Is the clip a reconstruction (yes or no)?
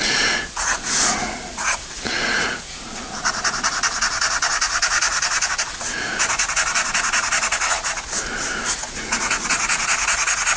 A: yes